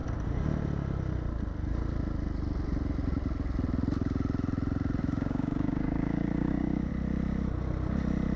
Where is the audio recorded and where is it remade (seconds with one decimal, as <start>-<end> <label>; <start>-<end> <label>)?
0.0-5.0 recorded; 5.0-6.9 remade; 6.9-8.4 recorded